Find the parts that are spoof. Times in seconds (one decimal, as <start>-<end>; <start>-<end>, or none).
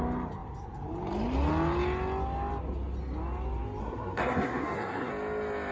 3.8-5.1